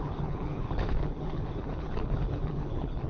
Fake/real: fake